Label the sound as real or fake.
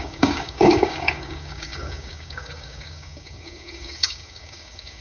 fake